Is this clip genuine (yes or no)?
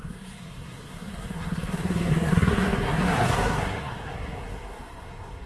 no